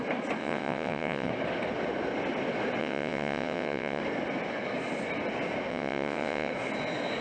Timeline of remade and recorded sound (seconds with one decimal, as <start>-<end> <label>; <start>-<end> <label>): 0.0-0.4 recorded; 0.4-1.3 remade; 1.3-2.8 recorded; 2.8-4.0 remade; 4.0-5.7 recorded; 5.7-6.5 remade; 6.5-7.2 recorded